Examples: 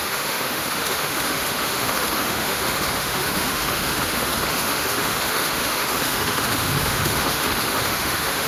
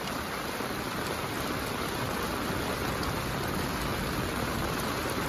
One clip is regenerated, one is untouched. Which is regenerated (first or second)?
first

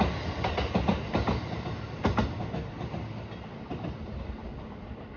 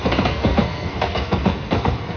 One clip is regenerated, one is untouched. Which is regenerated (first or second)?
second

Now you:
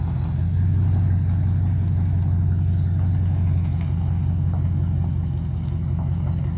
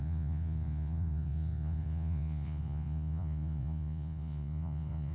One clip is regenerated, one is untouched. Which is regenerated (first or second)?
second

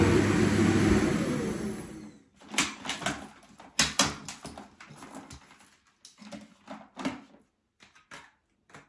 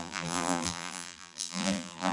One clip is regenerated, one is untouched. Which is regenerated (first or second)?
second